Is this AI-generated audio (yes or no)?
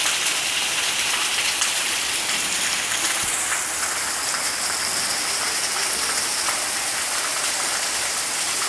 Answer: yes